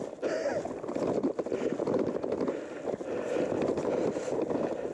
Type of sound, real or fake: real